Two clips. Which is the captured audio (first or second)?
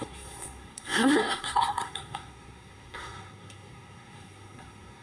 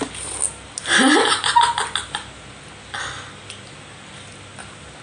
second